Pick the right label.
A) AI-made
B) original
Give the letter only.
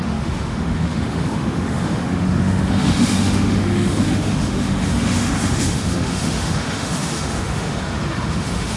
A